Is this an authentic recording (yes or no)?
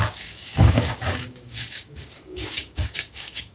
no